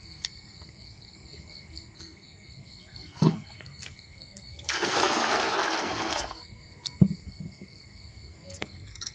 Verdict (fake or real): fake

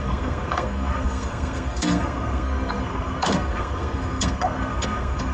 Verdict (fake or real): fake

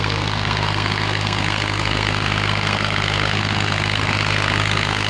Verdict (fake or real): fake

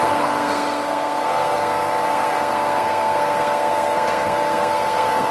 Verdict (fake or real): fake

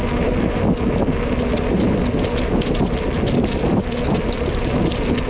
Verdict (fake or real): real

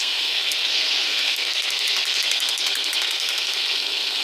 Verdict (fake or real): fake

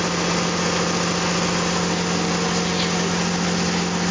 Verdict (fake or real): real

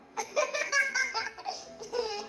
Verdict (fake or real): fake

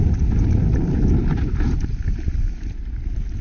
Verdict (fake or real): real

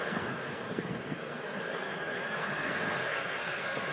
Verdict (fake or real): fake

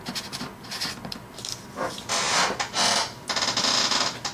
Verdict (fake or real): real